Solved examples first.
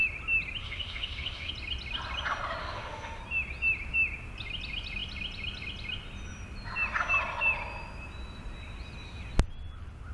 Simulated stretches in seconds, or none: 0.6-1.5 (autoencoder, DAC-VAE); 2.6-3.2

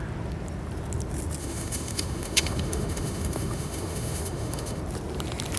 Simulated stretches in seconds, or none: 1.4-4.8 (autoencoder, DAC-VAE)

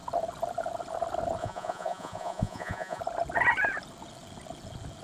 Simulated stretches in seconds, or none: 1.4-3.0 (vocoder, Vocos)